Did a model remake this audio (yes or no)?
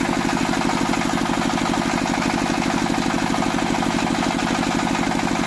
no